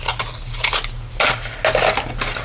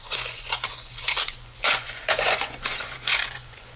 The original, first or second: first